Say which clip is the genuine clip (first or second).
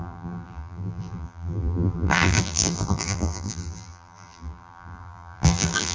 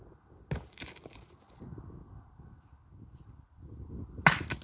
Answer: second